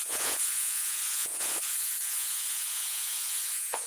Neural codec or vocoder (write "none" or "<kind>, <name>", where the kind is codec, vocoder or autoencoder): vocoder, Vocos